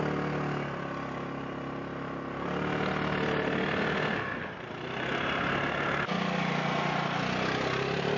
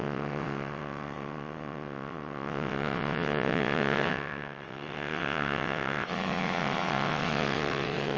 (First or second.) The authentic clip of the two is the first